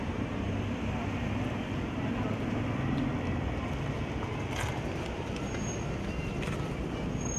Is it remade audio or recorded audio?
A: recorded